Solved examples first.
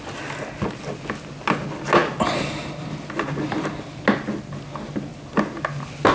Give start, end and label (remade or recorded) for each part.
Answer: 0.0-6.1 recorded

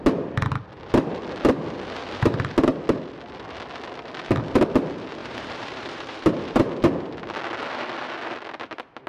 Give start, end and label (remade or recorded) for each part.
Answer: 0.0-5.2 recorded; 5.2-6.7 remade; 6.7-9.1 recorded

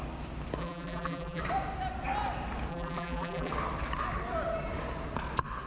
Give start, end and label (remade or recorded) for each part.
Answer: 0.0-0.6 recorded; 0.6-1.4 remade; 1.4-2.7 recorded; 2.7-3.5 remade; 3.5-5.7 recorded

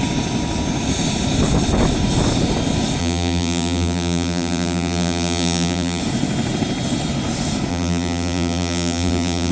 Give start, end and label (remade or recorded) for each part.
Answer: 0.0-3.0 recorded; 3.0-6.0 remade; 6.0-7.7 recorded; 7.7-9.5 remade

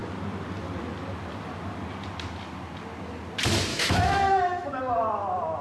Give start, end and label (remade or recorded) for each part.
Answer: 0.0-3.7 recorded; 3.7-4.8 remade; 4.8-5.6 recorded